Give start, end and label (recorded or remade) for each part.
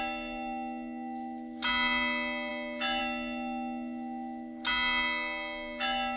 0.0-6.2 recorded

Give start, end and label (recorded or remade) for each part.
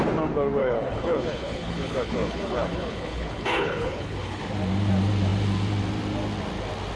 0.0-0.6 recorded; 0.6-4.4 remade; 4.4-7.0 recorded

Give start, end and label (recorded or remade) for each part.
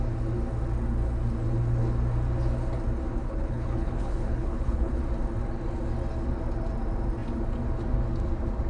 0.0-3.2 recorded; 3.2-5.0 remade; 5.0-8.7 recorded